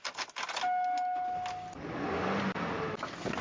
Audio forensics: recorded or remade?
recorded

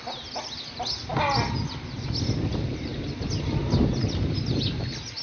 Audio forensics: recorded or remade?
recorded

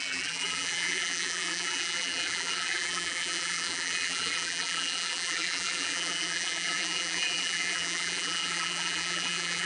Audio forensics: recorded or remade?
remade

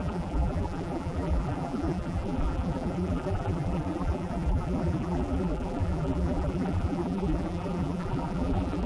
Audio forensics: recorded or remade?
remade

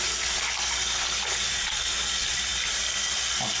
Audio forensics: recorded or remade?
recorded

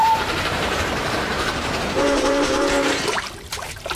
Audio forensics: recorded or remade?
remade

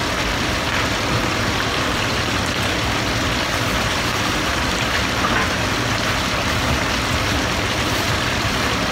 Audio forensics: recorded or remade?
remade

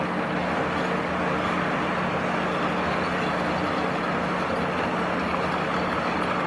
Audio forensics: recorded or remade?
recorded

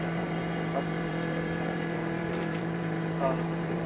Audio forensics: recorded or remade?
remade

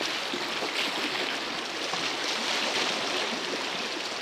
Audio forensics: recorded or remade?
recorded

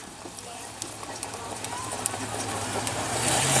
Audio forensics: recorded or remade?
remade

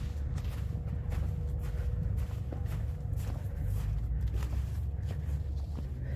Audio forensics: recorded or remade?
recorded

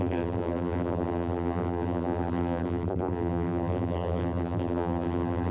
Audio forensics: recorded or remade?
remade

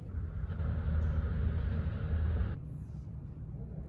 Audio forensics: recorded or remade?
recorded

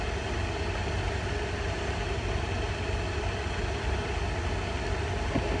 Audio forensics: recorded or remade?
recorded